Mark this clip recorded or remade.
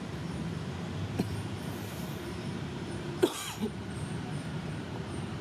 remade